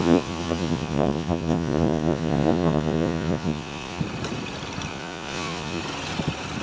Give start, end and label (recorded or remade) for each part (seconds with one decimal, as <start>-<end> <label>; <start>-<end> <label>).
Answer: 0.0-4.0 remade; 4.0-4.9 recorded; 4.9-5.8 remade; 5.8-6.6 recorded